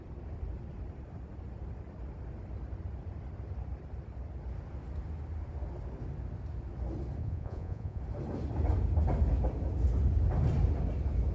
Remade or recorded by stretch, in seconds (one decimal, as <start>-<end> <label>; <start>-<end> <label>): 0.0-7.2 recorded; 7.2-8.0 remade; 8.0-11.3 recorded